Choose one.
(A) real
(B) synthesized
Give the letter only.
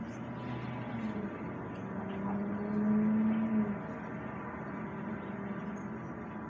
A